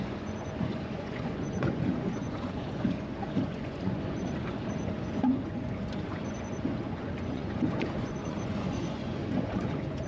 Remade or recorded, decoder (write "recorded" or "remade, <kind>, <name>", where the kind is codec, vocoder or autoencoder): remade, vocoder, Vocos